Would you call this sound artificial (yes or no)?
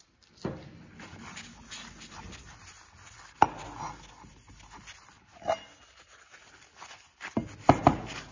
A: no